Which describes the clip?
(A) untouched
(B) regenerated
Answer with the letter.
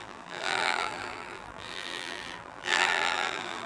B